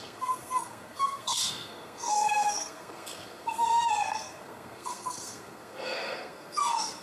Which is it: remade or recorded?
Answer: remade